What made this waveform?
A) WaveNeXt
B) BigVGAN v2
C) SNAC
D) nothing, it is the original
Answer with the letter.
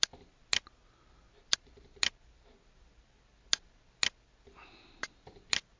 D